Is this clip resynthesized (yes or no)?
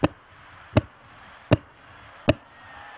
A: no